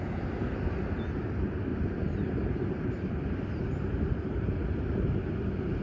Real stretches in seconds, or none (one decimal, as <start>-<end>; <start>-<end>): 0.0-5.8